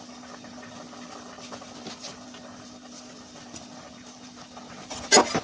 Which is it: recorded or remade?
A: recorded